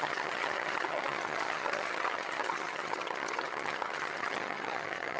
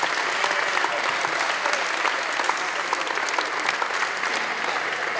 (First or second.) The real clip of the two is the second